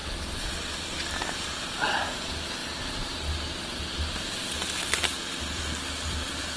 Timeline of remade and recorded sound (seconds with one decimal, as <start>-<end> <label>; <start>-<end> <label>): 0.0-6.6 recorded